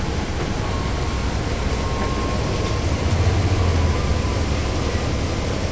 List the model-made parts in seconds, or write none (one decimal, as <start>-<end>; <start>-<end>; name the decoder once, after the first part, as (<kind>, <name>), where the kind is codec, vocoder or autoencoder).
none